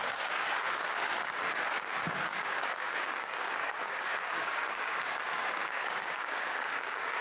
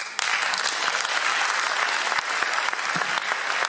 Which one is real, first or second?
second